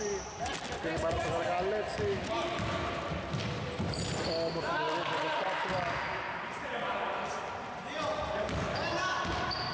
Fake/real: real